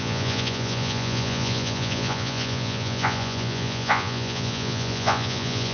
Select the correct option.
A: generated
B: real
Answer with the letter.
A